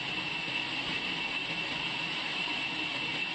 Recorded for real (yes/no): yes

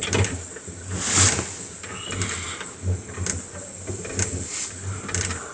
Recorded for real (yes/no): yes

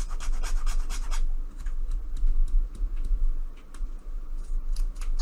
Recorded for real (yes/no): yes